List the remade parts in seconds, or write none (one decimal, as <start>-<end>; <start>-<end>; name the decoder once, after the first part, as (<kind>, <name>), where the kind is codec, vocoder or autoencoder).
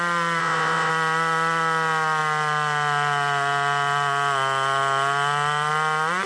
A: 0.4-0.9 (vocoder, WaveNeXt)